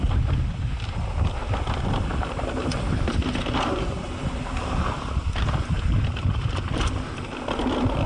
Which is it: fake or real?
real